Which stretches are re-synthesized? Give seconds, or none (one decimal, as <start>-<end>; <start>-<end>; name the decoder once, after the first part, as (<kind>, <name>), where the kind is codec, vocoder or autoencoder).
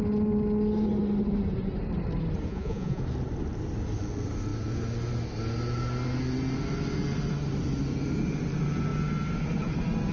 2.5-3.0 (vocoder, Vocos)